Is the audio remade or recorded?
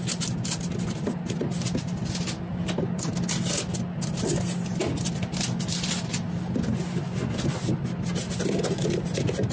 recorded